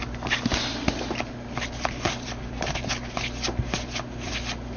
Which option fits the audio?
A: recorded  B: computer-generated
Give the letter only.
A